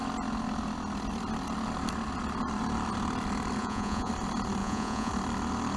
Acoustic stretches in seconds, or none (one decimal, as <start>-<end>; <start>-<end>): 0.0-3.6; 4.1-4.6; 5.1-5.8